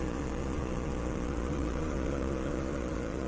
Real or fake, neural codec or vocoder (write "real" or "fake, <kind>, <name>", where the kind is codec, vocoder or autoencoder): fake, vocoder, Vocos